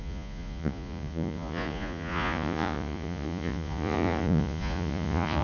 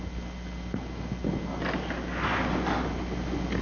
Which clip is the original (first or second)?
second